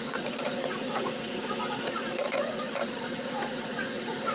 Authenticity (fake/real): fake